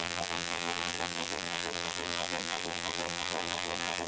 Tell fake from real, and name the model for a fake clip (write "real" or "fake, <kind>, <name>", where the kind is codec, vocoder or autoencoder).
fake, vocoder, BigVGAN v2